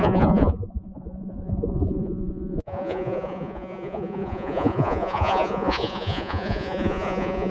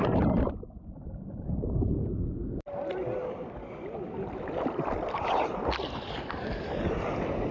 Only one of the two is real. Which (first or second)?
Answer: second